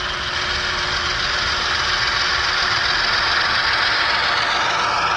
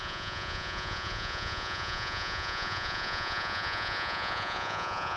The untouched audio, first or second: first